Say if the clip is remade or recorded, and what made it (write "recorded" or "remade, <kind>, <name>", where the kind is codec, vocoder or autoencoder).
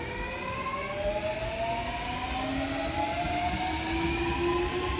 recorded